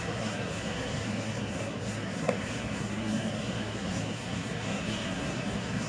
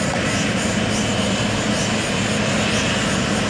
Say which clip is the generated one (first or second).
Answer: first